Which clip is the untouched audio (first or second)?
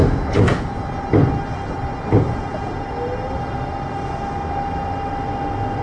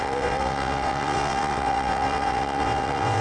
first